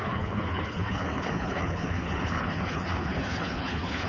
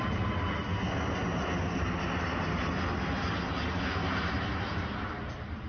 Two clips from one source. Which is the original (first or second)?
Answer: second